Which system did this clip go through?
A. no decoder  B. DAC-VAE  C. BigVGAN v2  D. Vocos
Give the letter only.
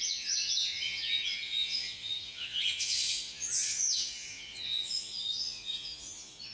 D